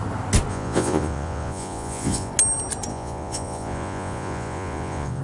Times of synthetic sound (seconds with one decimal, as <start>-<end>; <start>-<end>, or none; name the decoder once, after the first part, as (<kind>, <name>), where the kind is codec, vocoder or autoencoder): 0.5-2.3 (vocoder, Vocos); 2.9-5.2